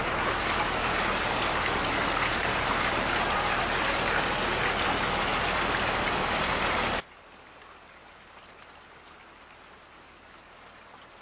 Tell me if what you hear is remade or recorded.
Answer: recorded